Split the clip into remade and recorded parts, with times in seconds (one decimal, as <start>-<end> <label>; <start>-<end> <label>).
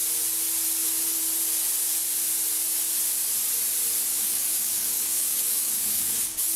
0.0-4.1 recorded; 4.1-6.6 remade